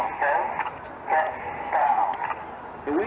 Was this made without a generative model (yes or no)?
yes